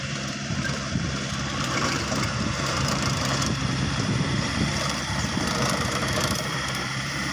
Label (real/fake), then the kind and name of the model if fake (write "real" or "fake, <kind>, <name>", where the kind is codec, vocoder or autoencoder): fake, vocoder, BigVGAN v2